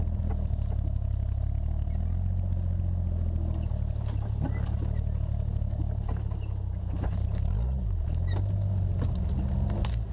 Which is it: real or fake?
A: real